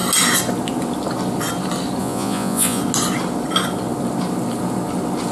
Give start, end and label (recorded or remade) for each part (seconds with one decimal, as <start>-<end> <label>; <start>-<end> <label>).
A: 0.0-2.0 recorded; 2.0-2.8 remade; 2.8-5.3 recorded